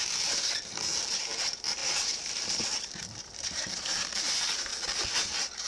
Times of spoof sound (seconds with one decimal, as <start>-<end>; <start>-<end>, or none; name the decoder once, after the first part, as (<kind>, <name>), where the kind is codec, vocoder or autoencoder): 0.0-4.7 (vocoder, BigVGAN v2); 5.3-5.7